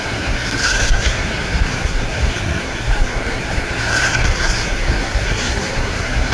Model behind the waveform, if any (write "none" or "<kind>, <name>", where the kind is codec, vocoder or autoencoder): codec, SNAC